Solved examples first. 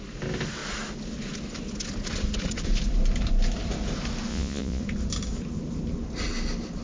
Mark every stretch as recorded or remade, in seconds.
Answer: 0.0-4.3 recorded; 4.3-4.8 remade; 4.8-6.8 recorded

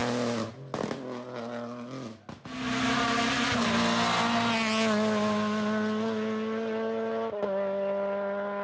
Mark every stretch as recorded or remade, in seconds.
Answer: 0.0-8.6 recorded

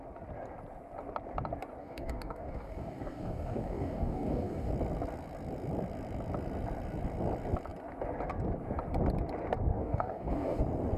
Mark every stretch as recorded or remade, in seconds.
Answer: 0.0-1.8 recorded; 1.8-4.7 remade; 4.7-9.7 recorded; 9.7-10.6 remade; 10.6-11.0 recorded